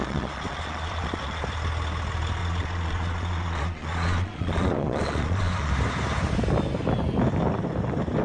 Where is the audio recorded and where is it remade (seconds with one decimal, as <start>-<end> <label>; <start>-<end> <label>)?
0.0-1.4 remade; 1.4-2.4 recorded; 2.4-5.7 remade; 5.7-8.2 recorded